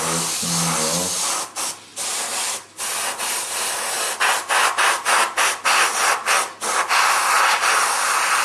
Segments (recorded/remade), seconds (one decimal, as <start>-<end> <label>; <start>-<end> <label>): 0.0-8.4 recorded